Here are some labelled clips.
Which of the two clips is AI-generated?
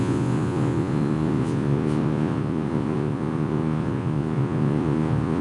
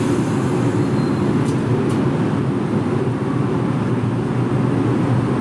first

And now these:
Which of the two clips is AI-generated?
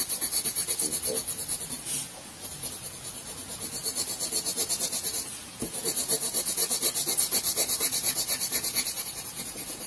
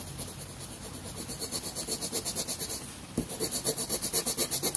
first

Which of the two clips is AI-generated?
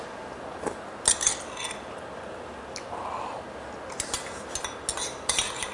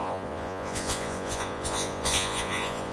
second